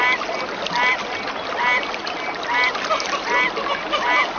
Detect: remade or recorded recorded